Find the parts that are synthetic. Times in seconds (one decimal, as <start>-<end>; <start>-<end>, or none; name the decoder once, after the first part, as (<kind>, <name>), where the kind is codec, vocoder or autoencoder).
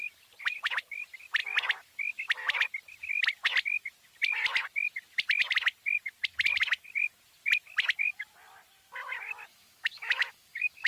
9.5-10.9 (autoencoder, DAC-VAE)